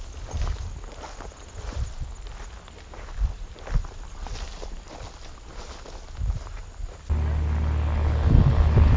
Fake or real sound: real